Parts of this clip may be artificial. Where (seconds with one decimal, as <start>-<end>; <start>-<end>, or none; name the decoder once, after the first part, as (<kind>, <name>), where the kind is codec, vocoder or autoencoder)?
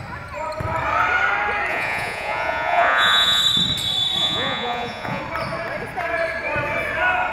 1.7-3.4 (vocoder, Vocos); 4.2-5.2